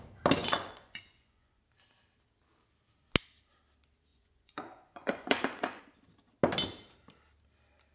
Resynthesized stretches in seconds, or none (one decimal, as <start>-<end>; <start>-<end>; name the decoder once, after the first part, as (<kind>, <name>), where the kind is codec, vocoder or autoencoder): 0.4-1.6 (vocoder, Vocos); 4.1-5.8